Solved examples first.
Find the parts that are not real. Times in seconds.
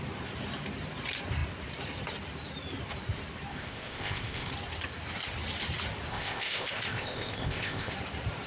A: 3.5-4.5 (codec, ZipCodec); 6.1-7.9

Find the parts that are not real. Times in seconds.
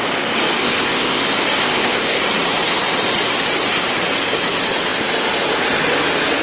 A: 0.6-1.2 (codec, ZipCodec); 1.6-2.2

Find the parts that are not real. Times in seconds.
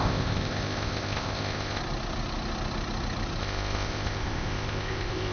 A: 0.0-1.8 (codec, ZipCodec); 3.4-5.3